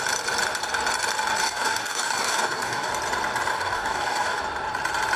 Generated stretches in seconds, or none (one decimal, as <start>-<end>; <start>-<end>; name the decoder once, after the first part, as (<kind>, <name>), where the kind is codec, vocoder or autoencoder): 1.4-2.9 (codec, DAC); 3.5-4.4